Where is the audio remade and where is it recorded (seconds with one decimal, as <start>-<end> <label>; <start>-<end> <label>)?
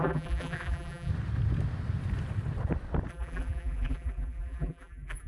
0.0-1.1 remade; 1.1-3.1 recorded; 3.1-5.3 remade